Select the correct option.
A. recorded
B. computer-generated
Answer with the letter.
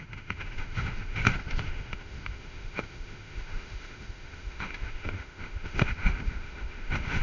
B